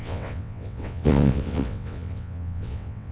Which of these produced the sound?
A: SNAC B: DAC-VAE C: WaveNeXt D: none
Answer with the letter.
C